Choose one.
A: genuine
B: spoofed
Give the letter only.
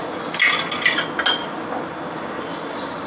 A